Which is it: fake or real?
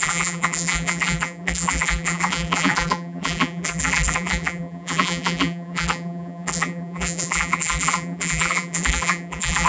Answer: fake